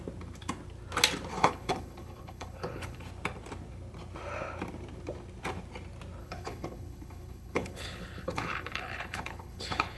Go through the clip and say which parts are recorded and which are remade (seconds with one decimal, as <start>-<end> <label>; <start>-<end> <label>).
0.0-1.3 recorded; 1.3-3.1 remade; 3.1-6.2 recorded; 6.2-10.0 remade